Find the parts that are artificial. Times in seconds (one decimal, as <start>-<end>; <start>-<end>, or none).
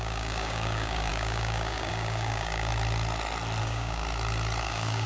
0.0-2.7; 3.6-4.0; 4.6-5.1